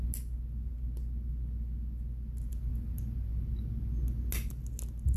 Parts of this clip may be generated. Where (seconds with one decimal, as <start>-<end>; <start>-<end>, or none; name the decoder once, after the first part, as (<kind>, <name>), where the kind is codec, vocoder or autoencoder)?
none

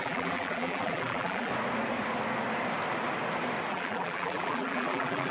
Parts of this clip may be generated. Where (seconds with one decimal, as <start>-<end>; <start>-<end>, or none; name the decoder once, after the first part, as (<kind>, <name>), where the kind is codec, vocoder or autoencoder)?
0.0-1.5 (vocoder, BigVGAN v2); 3.7-5.3